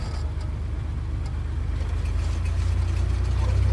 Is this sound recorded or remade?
recorded